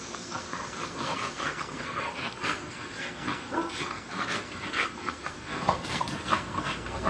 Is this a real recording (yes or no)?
no